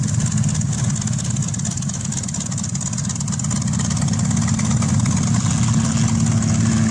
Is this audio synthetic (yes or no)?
no